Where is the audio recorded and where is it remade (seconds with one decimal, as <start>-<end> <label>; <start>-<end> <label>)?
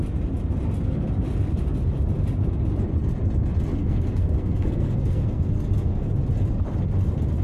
0.0-3.8 recorded; 3.8-6.1 remade; 6.1-7.4 recorded